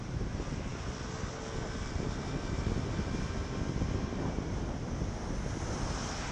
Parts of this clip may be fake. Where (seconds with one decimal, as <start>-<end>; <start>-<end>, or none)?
none